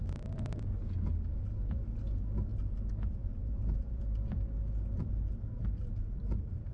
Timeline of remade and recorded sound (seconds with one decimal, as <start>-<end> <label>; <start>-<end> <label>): 0.0-2.5 recorded; 2.5-4.0 remade; 4.0-6.7 recorded